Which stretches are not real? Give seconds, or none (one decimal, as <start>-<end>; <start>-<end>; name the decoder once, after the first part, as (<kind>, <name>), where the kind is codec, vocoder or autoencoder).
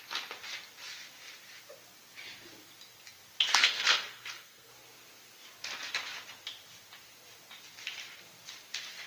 3.5-4.7 (codec, SNAC)